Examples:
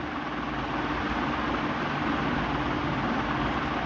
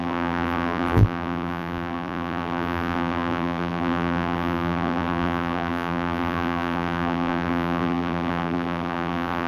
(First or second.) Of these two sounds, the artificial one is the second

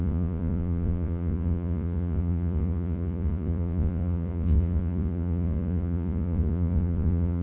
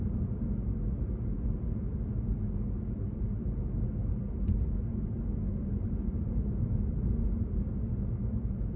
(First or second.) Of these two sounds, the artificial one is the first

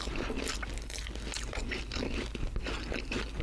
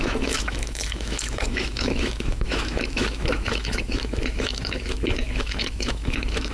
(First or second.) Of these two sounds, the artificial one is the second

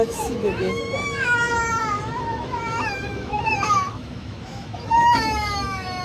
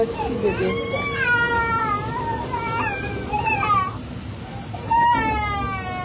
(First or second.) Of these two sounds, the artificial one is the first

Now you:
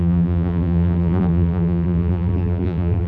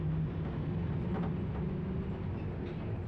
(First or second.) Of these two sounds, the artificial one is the first